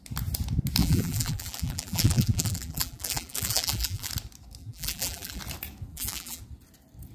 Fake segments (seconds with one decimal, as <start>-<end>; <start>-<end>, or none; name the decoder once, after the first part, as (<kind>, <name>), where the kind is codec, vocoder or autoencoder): 0.8-4.1 (vocoder, BigVGAN v2); 4.6-5.4; 5.9-6.4